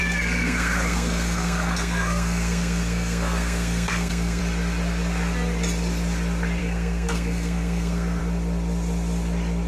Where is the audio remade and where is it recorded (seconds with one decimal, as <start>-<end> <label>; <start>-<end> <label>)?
0.0-4.4 remade; 4.4-6.6 recorded; 6.6-8.2 remade; 8.2-9.7 recorded